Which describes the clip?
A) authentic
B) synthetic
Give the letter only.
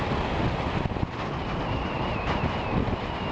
A